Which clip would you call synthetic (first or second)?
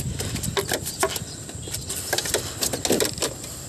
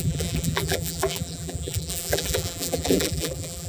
second